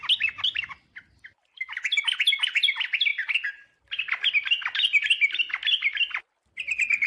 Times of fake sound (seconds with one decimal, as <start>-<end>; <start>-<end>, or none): none